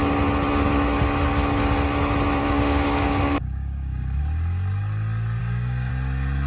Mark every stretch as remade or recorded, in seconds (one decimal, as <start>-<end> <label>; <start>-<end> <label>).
0.0-2.4 recorded; 2.4-4.2 remade; 4.2-5.4 recorded; 5.4-5.9 remade; 5.9-6.5 recorded